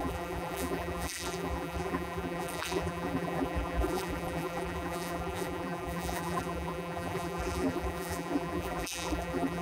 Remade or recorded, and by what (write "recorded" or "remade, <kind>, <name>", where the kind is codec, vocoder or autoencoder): remade, vocoder, BigVGAN v2